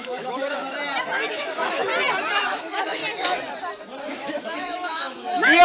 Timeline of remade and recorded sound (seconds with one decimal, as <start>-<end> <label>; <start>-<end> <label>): 0.0-0.6 remade; 0.6-1.3 recorded; 1.3-1.9 remade; 1.9-2.4 recorded; 2.4-3.0 remade; 3.0-4.1 recorded; 4.1-5.6 remade